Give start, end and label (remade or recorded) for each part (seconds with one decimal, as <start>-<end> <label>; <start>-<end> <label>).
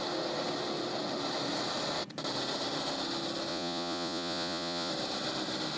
0.0-3.5 recorded; 3.5-4.9 remade; 4.9-5.8 recorded